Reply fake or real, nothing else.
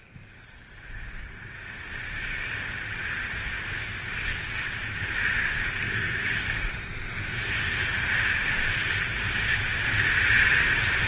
real